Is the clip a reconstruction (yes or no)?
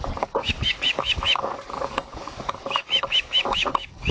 yes